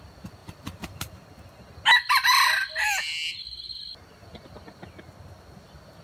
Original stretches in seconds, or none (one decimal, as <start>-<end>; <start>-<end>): 0.0-0.4; 1.6-6.0